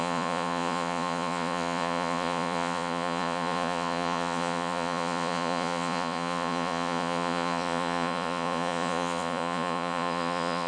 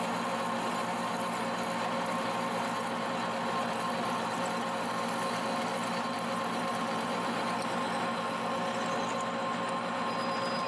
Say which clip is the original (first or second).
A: second